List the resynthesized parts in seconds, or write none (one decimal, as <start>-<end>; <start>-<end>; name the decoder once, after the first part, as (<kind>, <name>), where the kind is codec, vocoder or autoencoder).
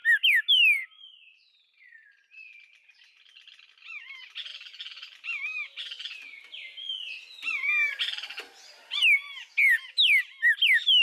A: none